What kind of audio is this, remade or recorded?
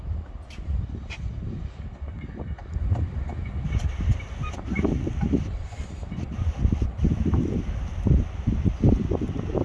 recorded